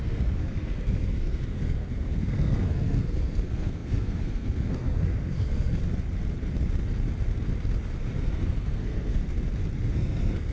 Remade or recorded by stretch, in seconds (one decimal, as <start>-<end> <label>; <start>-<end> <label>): 0.0-5.8 remade; 5.8-8.2 recorded; 8.2-9.2 remade; 9.2-9.9 recorded; 9.9-10.5 remade

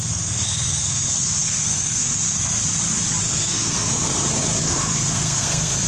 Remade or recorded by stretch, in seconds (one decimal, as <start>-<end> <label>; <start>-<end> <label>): 0.0-2.6 remade; 2.6-3.2 recorded; 3.2-4.1 remade; 4.1-4.6 recorded; 4.6-5.9 remade

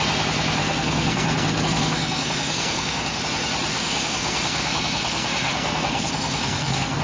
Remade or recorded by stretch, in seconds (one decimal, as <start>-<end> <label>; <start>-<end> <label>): 0.0-0.6 recorded; 0.6-3.2 remade; 3.2-3.7 recorded; 3.7-7.0 remade

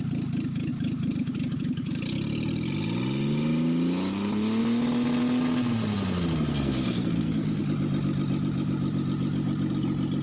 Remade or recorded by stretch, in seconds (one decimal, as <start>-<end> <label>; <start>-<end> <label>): 0.0-6.5 recorded; 6.5-7.6 remade; 7.6-10.2 recorded

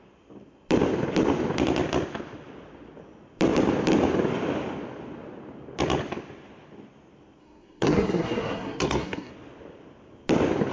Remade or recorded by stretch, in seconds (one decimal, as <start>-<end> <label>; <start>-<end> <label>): 0.0-7.4 recorded; 7.4-9.3 remade; 9.3-10.7 recorded

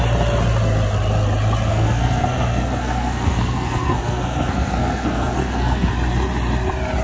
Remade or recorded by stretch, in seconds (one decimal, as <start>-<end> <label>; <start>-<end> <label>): 0.0-1.7 recorded; 1.7-5.9 remade; 5.9-7.0 recorded

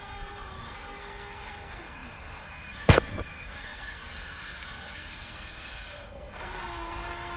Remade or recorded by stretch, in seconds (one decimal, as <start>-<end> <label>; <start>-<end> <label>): 0.0-7.4 remade

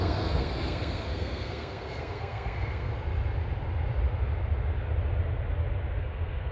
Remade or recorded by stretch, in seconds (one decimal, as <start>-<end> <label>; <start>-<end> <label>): 0.0-2.9 remade; 2.9-6.0 recorded; 6.0-6.5 remade